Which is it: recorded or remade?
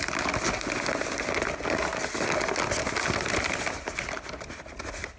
recorded